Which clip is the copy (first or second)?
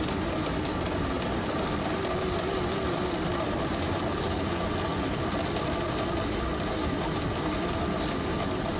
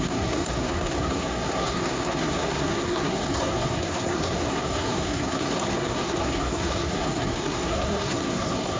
second